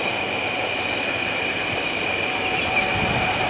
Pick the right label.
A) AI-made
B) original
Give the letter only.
B